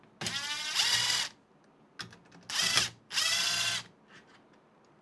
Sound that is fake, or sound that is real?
real